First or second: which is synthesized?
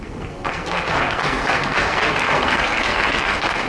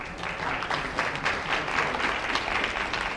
first